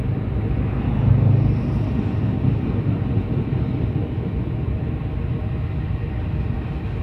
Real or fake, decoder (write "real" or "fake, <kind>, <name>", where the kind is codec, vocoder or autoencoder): real